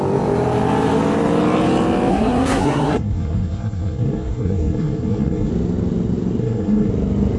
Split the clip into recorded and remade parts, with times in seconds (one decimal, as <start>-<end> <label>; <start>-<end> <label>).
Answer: 0.0-2.1 recorded; 2.1-5.5 remade; 5.5-6.4 recorded; 6.4-6.9 remade; 6.9-7.4 recorded